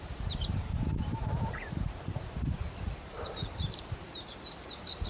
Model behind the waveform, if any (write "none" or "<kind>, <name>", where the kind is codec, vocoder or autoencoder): vocoder, BigVGAN v2